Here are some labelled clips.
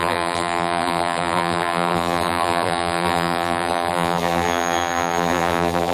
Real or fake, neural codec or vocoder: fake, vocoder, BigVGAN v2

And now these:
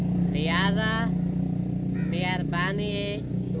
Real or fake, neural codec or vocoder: real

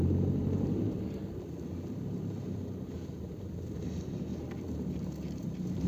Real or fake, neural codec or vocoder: fake, vocoder, BigVGAN v2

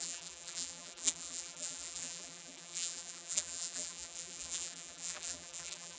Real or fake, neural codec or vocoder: fake, vocoder, BigVGAN v2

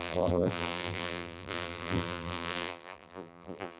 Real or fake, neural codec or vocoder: fake, vocoder, BigVGAN v2